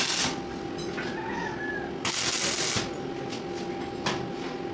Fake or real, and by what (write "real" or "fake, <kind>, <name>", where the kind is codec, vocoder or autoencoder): real